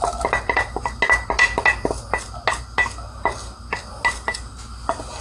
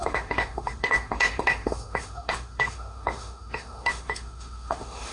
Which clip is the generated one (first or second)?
second